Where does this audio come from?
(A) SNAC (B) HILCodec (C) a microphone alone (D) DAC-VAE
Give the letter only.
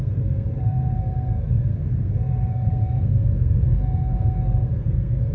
A